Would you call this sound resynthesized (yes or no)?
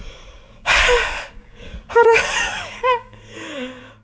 yes